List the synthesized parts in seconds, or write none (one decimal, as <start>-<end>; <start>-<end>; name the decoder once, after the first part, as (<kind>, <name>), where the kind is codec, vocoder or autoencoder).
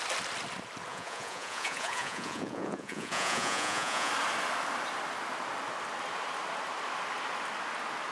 0.9-4.1 (vocoder, Vocos)